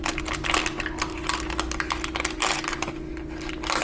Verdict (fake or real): real